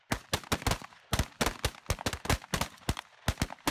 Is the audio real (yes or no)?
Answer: yes